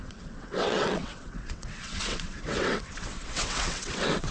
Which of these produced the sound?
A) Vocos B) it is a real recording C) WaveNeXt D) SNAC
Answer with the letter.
C